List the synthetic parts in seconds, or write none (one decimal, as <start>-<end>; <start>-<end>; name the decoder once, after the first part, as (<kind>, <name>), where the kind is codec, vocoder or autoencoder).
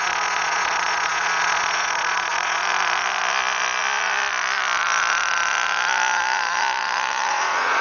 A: 0.0-2.6 (vocoder, Vocos); 7.3-7.8